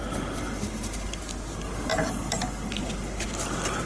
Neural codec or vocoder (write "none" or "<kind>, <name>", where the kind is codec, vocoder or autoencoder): none